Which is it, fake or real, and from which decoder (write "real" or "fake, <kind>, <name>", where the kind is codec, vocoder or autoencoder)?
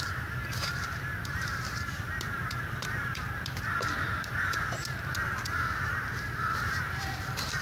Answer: fake, vocoder, BigVGAN v2